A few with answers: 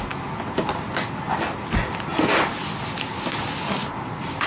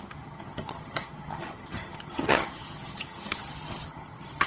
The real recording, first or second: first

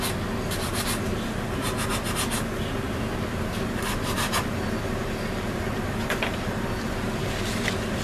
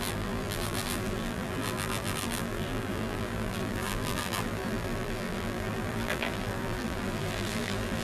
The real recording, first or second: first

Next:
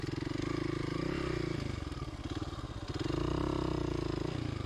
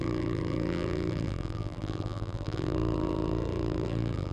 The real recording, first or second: first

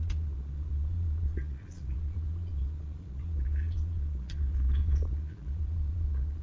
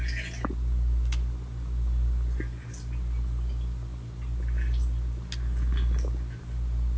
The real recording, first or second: second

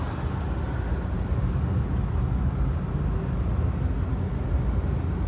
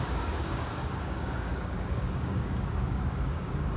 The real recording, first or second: first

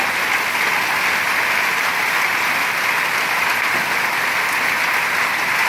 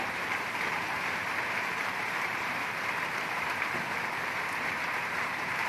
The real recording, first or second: first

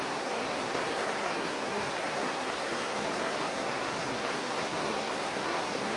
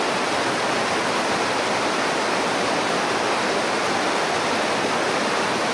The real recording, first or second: second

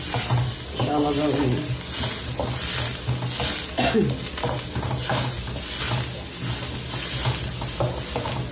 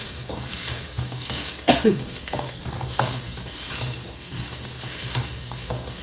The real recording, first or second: first